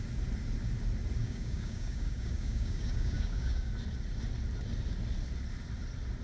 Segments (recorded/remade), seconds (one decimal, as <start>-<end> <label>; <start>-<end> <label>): 0.0-1.2 recorded; 1.2-3.7 remade; 3.7-6.2 recorded